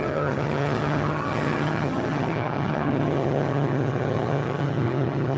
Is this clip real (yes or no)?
no